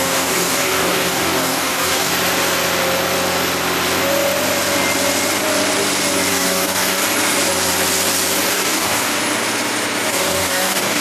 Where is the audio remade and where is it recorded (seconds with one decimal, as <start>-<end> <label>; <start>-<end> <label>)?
0.0-2.1 remade; 2.1-6.3 recorded; 6.3-7.0 remade; 7.0-8.5 recorded; 8.5-9.2 remade; 9.2-10.1 recorded; 10.1-11.0 remade